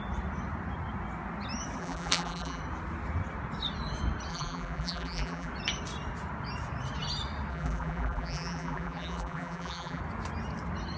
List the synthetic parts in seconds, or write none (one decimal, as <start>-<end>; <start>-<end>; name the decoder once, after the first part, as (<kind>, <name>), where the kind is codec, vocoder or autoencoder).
1.8-2.6 (vocoder, BigVGAN v2); 4.3-5.5; 7.5-10.0